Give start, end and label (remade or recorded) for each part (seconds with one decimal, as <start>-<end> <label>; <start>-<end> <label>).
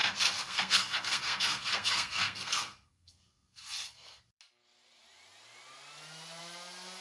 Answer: 0.0-4.2 remade; 4.2-7.0 recorded